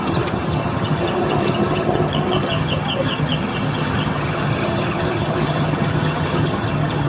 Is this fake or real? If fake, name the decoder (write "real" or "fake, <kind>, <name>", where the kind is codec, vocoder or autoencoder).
fake, vocoder, HiFi-GAN